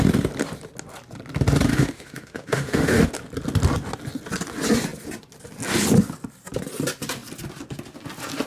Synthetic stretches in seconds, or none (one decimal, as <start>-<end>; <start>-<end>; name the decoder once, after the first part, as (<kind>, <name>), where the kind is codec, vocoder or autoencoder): 1.7-3.1 (autoencoder, DAC-VAE)